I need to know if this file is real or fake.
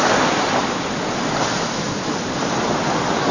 real